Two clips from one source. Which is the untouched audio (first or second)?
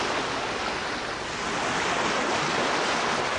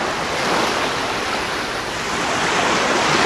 first